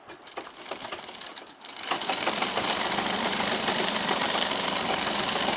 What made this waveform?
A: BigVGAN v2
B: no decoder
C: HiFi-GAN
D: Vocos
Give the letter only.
A